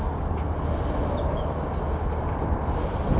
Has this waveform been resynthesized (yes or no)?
no